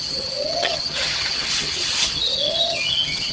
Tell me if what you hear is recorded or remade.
remade